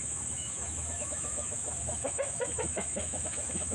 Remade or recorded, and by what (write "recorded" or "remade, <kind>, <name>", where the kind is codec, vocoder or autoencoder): remade, autoencoder, DAC-VAE